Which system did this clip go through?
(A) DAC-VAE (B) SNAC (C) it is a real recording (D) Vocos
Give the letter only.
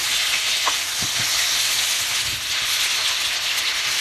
C